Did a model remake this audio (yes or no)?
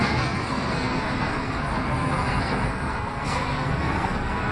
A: yes